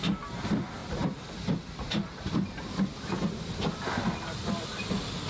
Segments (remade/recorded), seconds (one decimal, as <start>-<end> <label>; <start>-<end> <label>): 0.0-5.3 recorded